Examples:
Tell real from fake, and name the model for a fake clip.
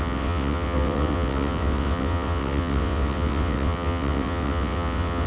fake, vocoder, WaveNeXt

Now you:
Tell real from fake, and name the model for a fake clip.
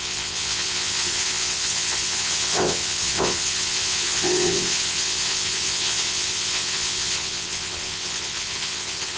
fake, vocoder, WaveNeXt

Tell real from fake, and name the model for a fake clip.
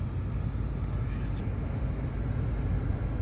real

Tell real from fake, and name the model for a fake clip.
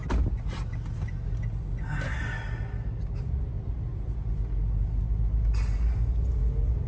real